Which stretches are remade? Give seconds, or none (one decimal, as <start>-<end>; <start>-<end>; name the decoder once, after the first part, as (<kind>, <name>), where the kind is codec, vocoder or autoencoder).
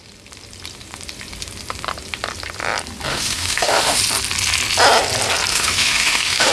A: 3.1-4.0 (autoencoder, DAC-VAE); 5.5-6.5